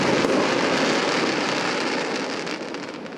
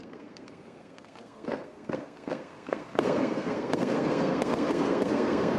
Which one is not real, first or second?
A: second